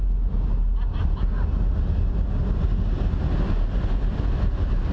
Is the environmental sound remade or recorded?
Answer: recorded